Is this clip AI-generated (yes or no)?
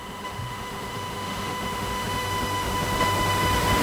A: yes